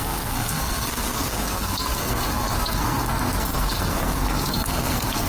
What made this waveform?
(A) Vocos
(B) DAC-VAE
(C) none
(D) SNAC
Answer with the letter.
D